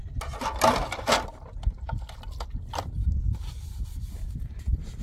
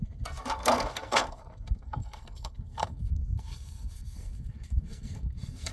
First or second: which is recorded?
first